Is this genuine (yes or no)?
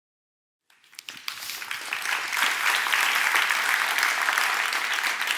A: yes